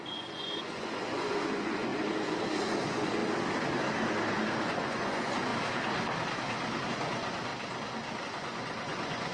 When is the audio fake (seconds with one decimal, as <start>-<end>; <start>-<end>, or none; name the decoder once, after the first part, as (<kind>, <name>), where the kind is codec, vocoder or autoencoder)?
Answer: 0.0-1.9 (vocoder, Vocos); 2.6-3.2; 4.3-5.5; 6.9-7.5; 8.2-9.3